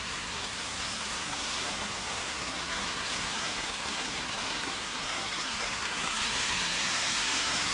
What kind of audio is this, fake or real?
fake